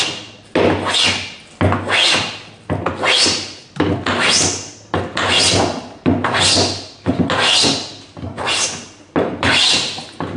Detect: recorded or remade recorded